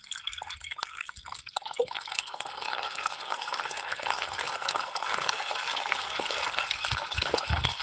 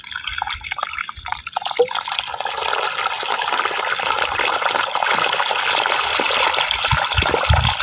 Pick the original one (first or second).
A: second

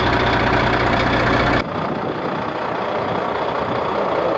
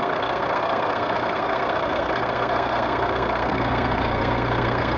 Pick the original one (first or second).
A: first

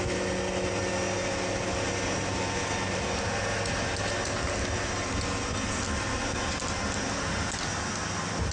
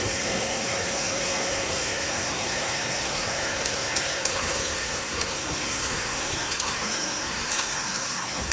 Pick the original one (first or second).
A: first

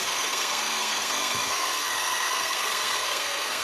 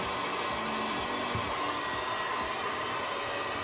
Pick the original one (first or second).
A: second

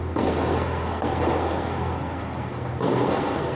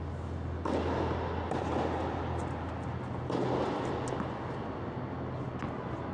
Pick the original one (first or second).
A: second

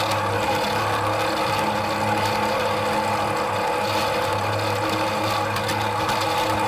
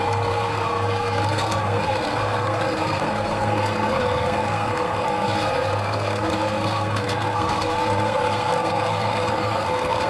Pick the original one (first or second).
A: first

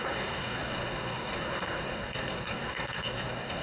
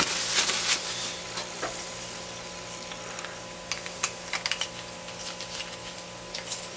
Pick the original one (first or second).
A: second